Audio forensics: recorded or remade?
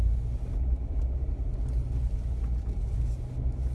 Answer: recorded